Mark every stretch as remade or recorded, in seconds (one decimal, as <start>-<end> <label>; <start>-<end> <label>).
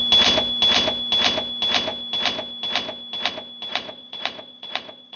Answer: 0.0-3.7 recorded; 3.7-5.2 remade